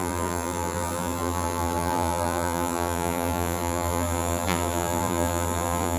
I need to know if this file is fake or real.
fake